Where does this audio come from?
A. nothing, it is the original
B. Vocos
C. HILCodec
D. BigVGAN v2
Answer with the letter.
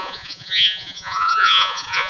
B